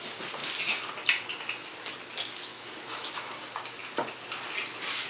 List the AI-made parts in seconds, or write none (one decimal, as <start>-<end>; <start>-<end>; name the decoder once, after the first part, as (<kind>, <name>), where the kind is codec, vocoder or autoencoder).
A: 2.5-3.3 (autoencoder, DAC-VAE)